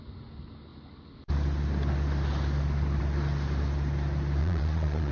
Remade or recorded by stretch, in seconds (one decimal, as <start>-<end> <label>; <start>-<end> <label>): 0.0-4.4 recorded; 4.4-5.1 remade

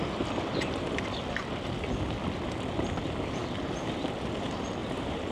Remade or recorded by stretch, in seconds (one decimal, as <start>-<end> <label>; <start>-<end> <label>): 0.0-4.8 recorded; 4.8-5.3 remade

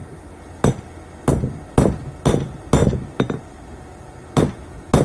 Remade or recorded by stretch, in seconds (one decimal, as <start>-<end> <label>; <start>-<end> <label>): 0.0-5.0 recorded